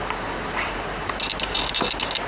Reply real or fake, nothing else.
real